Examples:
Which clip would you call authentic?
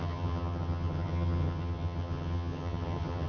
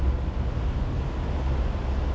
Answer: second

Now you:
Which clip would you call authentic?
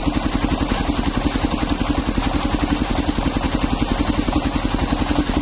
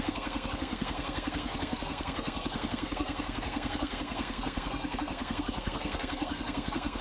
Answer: first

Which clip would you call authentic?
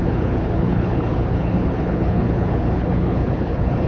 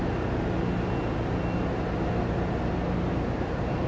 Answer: second